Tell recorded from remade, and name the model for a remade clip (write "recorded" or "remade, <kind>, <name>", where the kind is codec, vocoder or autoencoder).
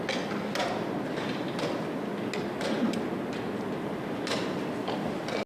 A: recorded